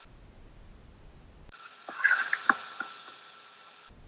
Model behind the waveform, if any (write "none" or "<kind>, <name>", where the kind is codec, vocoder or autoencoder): none